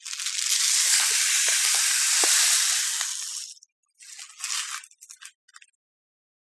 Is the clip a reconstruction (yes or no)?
no